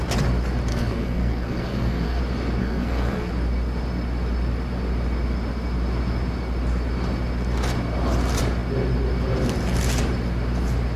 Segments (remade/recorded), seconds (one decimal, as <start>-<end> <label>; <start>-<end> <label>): 0.0-0.7 recorded; 0.7-2.2 remade; 2.2-2.6 recorded; 2.6-3.3 remade; 3.3-11.0 recorded